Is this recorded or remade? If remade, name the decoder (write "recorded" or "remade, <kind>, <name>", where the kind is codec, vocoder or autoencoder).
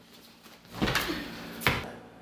recorded